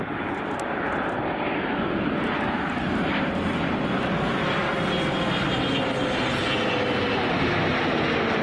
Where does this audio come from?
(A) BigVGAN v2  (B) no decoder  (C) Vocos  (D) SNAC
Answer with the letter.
B